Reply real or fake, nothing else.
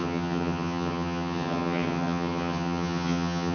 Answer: fake